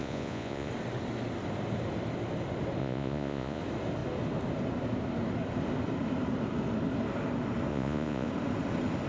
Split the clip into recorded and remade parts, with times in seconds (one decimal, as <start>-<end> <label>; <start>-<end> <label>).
0.0-0.7 remade; 0.7-2.8 recorded; 2.8-3.6 remade; 3.6-7.7 recorded; 7.7-8.3 remade; 8.3-9.1 recorded